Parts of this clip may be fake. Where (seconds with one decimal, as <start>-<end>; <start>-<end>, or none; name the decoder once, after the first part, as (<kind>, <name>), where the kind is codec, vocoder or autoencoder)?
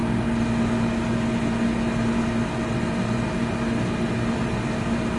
none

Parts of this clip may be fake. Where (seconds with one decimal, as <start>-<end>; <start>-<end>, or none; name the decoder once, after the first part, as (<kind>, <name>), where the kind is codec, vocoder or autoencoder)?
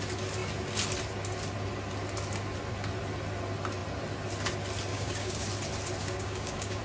4.9-5.5 (codec, DAC); 6.0-6.8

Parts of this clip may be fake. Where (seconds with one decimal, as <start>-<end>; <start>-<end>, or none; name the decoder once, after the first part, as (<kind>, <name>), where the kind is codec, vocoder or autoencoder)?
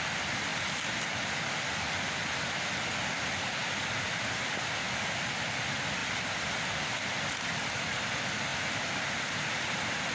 none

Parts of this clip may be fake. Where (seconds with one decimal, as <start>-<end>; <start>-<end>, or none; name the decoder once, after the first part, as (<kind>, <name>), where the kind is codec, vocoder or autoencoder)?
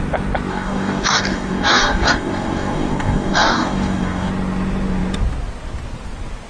0.5-4.3 (codec, DAC)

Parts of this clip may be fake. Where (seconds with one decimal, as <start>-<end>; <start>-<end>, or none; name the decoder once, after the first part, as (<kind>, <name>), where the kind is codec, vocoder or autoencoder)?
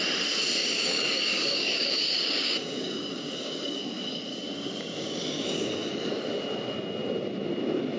0.6-3.8 (codec, DAC); 4.3-5.9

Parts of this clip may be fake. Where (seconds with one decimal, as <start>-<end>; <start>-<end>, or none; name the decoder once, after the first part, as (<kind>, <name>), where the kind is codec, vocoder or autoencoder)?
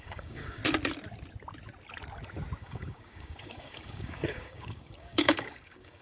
0.0-0.6 (codec, DAC); 2.6-6.0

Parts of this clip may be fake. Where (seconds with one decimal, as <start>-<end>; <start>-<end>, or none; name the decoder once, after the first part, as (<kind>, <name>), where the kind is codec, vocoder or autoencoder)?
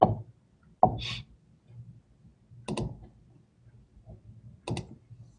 none